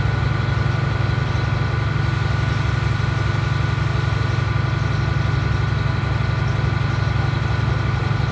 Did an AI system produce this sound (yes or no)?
no